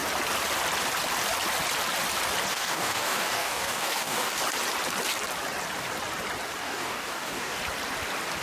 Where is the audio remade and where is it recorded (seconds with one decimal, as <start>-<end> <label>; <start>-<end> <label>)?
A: 0.0-2.5 recorded; 2.5-4.4 remade; 4.4-6.6 recorded; 6.6-7.6 remade; 7.6-8.4 recorded